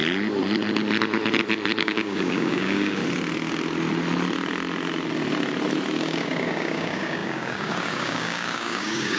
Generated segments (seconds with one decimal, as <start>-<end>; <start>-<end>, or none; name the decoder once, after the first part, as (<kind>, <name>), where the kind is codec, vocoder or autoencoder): 1.8-3.0 (codec, DAC); 6.0-9.2